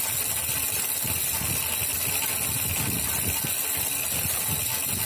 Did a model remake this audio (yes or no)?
no